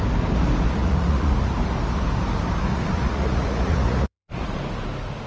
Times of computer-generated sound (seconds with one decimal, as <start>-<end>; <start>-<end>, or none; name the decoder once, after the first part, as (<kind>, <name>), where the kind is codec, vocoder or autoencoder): 0.8-1.3 (vocoder, Vocos); 2.7-4.6